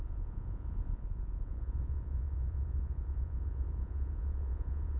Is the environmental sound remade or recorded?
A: remade